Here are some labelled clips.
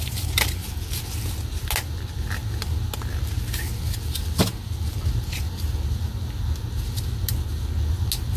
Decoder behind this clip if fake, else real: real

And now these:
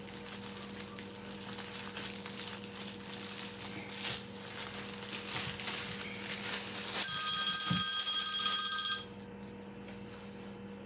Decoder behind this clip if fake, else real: real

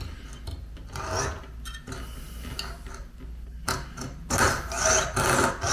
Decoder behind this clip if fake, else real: real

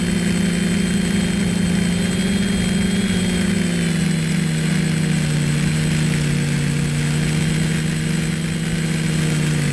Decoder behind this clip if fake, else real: real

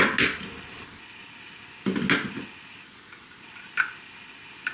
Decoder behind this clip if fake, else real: real